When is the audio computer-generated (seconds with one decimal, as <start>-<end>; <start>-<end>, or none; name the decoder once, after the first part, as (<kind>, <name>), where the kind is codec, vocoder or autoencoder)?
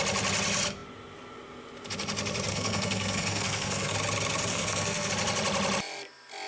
2.5-3.9 (codec, SNAC); 4.5-5.1